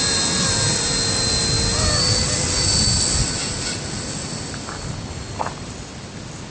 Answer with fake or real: real